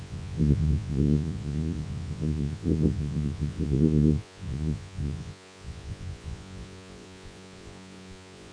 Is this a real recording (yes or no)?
no